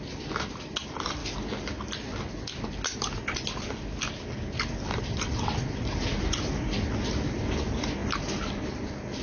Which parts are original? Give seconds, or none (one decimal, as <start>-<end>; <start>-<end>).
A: 0.0-9.2